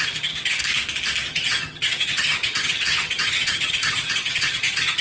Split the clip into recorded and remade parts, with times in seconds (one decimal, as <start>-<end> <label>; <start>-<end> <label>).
0.0-0.6 remade; 0.6-1.3 recorded; 1.3-5.0 remade